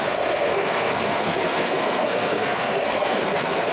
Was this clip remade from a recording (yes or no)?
yes